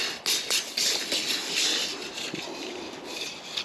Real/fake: real